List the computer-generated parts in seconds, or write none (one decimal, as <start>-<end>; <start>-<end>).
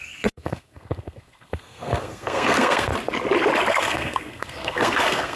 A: 0.0-2.9; 3.7-5.4